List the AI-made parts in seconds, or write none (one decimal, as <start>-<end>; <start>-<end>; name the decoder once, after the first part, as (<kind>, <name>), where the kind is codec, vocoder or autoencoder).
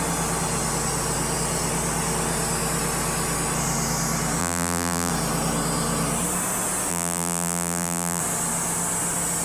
4.4-5.1 (vocoder, BigVGAN v2); 6.9-8.2